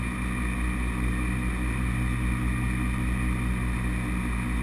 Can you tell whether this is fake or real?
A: real